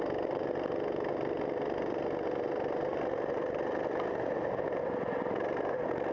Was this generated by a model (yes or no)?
no